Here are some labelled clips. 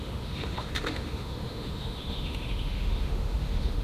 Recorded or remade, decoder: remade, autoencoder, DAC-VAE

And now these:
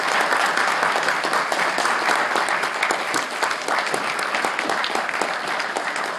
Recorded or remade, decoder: recorded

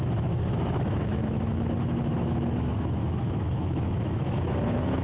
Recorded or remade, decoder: remade, autoencoder, DAC-VAE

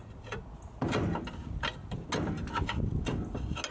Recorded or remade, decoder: recorded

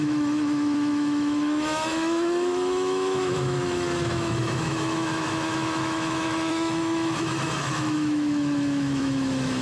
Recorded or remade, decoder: remade, autoencoder, DAC-VAE